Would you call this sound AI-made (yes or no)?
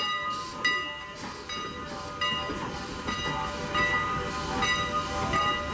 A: no